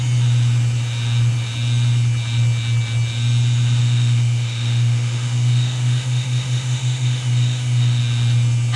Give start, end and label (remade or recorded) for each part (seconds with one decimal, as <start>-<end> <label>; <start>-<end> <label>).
0.0-3.8 recorded; 3.8-8.0 remade; 8.0-8.8 recorded